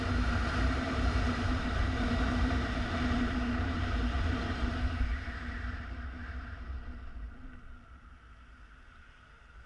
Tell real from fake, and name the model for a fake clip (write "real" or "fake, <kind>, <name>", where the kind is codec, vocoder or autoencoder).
fake, vocoder, BigVGAN v2